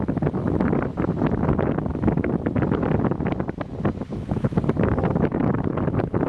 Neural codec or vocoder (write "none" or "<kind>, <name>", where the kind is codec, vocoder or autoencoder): none